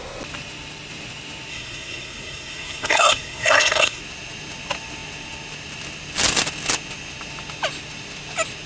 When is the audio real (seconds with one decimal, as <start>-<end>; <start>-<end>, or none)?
0.0-1.5; 4.0-8.7